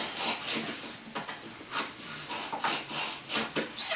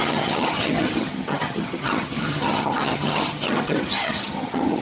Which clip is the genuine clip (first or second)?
first